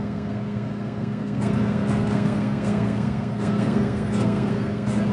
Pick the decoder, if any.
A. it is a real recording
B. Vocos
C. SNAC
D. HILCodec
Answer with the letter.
C